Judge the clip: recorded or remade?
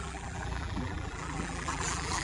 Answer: remade